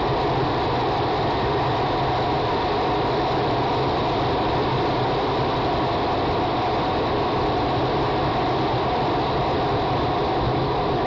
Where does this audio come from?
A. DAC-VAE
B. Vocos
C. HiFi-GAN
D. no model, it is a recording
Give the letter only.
D